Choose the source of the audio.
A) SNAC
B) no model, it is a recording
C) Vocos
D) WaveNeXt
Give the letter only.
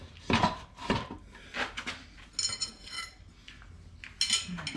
B